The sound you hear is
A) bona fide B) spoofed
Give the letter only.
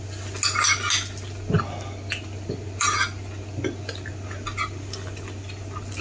A